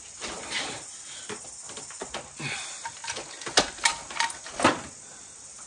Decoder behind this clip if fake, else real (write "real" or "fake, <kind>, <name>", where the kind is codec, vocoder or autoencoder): real